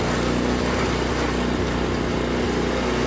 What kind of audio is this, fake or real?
real